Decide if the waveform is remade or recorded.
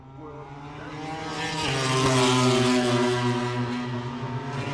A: recorded